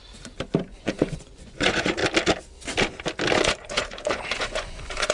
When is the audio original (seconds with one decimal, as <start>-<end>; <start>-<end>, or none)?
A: 0.0-0.6; 2.0-3.4